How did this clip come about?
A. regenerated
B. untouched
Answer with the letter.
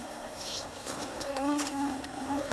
A